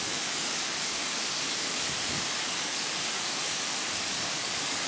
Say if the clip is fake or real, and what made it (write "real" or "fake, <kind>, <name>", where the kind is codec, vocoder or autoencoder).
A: fake, codec, DAC